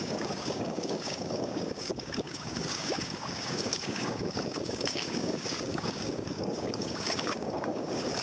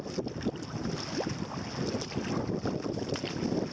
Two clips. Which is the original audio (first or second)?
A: second